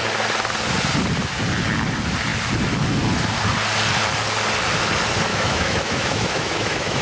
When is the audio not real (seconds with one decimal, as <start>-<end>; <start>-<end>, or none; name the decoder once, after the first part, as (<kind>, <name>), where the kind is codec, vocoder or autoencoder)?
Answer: 5.3-7.0 (autoencoder, DAC-VAE)